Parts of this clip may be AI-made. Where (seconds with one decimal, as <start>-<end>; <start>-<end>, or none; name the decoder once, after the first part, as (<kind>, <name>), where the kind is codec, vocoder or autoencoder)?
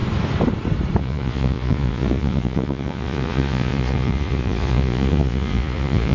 1.0-6.1 (vocoder, Vocos)